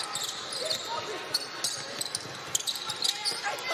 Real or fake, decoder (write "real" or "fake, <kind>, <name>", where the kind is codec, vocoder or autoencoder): real